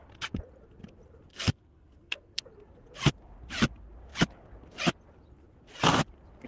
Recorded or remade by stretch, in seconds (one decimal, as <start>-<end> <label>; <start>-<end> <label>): 0.0-1.3 recorded; 1.3-2.4 remade; 2.4-6.5 recorded